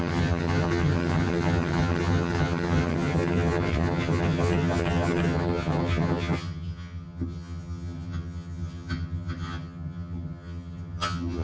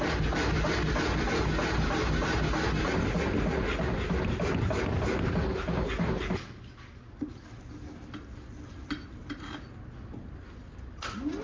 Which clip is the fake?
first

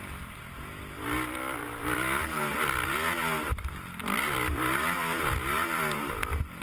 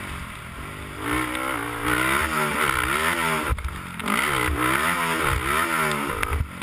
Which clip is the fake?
first